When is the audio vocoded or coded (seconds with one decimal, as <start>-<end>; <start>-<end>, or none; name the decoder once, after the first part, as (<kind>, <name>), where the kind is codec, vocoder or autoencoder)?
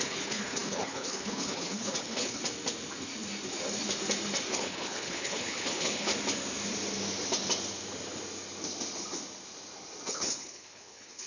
0.0-2.4 (codec, HILCodec); 4.5-6.1; 10.1-11.3